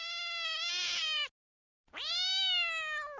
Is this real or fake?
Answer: real